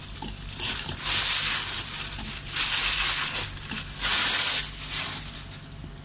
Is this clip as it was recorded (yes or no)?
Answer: yes